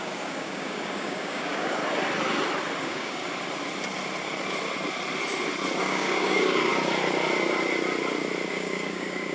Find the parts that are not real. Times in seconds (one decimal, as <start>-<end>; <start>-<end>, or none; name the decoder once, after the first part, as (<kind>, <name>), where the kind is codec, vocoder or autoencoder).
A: 0.0-1.8 (codec, DAC); 2.8-3.2; 5.8-6.7; 8.5-9.3